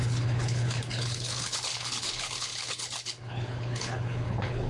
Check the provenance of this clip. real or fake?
fake